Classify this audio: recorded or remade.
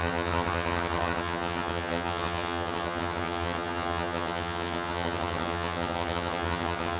remade